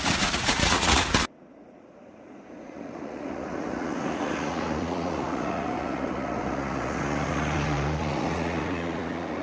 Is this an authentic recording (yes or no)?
no